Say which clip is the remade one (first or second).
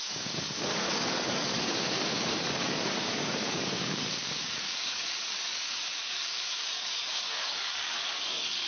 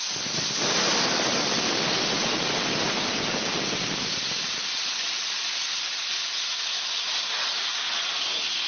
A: first